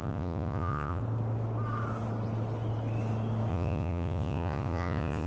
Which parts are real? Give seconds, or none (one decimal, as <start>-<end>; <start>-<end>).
1.0-3.5